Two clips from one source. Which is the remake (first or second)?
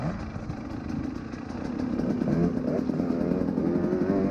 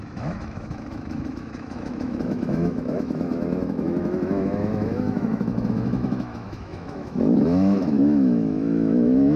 second